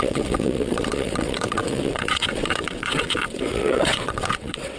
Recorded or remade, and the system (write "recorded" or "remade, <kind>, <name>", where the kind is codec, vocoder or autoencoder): remade, vocoder, WaveNeXt